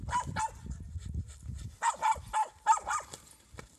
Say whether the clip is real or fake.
real